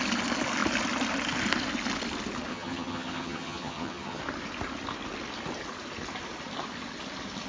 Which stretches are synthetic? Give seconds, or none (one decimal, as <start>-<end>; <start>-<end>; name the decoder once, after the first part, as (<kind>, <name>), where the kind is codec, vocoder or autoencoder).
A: 2.5-4.2 (vocoder, HiFi-GAN)